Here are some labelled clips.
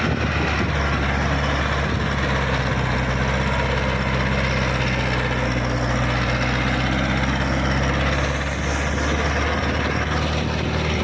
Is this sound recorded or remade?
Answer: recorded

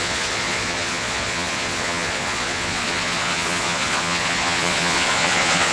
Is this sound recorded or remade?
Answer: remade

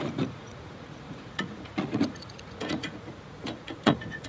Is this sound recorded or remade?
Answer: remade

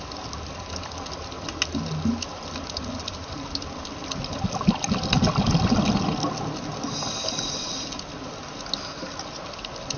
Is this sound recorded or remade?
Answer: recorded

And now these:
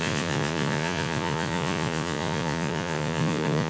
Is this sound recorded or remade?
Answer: remade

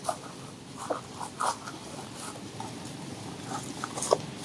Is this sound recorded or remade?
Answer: recorded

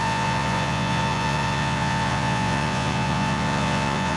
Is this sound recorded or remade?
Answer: remade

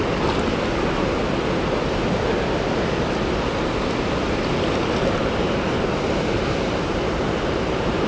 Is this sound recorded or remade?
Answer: recorded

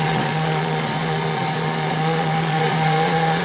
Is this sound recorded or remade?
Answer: remade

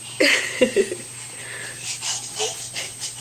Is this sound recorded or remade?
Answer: recorded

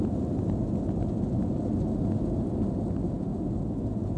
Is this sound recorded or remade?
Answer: recorded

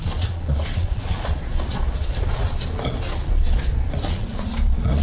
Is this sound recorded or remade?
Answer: remade